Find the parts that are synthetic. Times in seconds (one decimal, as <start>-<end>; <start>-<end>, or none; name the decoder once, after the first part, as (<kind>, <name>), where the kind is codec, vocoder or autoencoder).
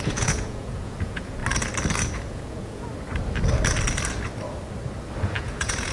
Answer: 0.0-1.4 (vocoder, Vocos); 2.0-2.9; 5.4-5.9